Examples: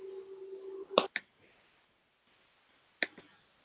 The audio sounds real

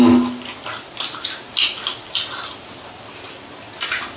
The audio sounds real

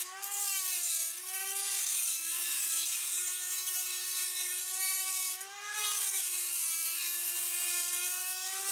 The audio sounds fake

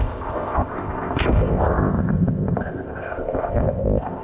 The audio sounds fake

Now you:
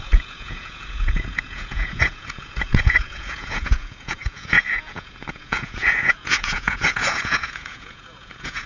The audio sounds fake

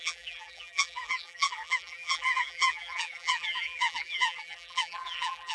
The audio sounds fake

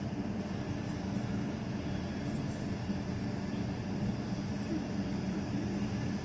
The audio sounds real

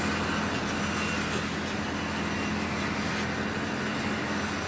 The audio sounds real